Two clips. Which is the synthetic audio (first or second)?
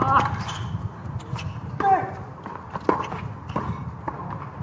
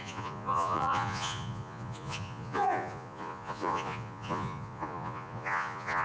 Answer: second